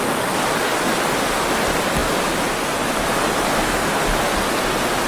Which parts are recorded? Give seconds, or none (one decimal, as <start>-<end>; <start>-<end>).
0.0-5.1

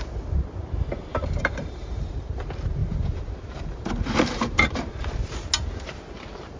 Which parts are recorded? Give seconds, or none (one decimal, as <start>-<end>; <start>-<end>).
0.0-1.1; 2.4-2.8; 4.9-6.6

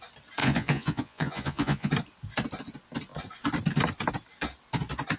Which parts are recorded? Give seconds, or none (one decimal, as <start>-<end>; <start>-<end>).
0.0-0.4; 1.9-5.2

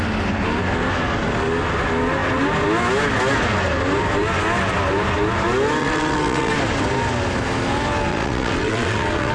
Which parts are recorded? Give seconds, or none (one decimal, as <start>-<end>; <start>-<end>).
0.0-5.8; 6.5-8.1

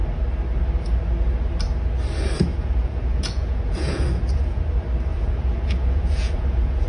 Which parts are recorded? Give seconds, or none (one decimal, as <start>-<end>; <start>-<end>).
0.0-2.5; 4.6-5.1

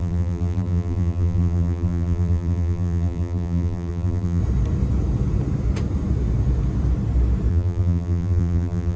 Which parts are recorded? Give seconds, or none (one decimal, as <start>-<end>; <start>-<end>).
4.4-7.5

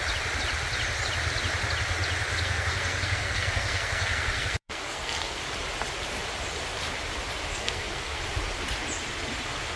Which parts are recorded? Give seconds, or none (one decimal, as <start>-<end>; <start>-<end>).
0.0-2.3; 5.4-7.5; 8.2-9.8

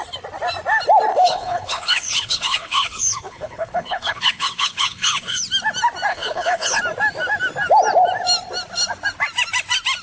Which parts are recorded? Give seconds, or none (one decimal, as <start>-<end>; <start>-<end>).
0.0-1.1; 5.4-6.1; 6.8-10.0